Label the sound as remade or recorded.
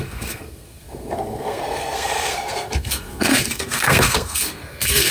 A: remade